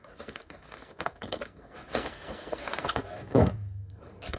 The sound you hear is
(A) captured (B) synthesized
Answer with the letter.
B